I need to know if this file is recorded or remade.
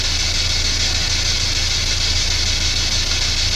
recorded